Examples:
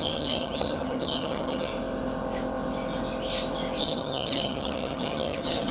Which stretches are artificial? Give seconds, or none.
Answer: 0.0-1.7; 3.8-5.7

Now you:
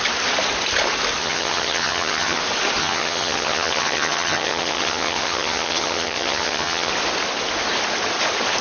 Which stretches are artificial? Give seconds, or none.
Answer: 1.2-2.4; 2.8-6.9

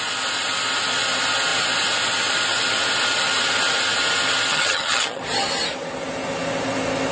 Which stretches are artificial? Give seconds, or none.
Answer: 4.5-5.2

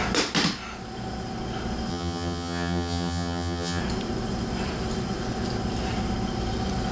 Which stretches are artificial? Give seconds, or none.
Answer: 1.9-3.8

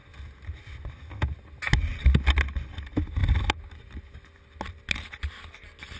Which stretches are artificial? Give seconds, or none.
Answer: none

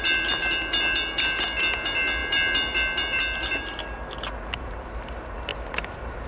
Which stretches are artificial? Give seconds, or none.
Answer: none

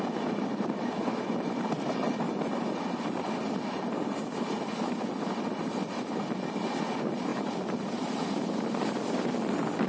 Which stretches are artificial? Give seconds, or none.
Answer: none